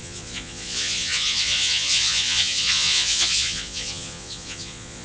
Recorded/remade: remade